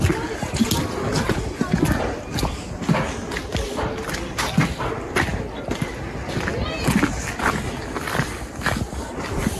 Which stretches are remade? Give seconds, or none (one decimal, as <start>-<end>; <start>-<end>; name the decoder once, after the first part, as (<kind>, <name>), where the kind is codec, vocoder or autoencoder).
none